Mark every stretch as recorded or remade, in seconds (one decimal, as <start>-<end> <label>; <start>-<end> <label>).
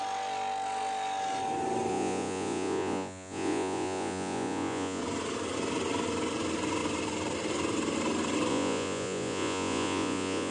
0.0-1.9 recorded; 1.9-5.0 remade; 5.0-8.5 recorded; 8.5-10.5 remade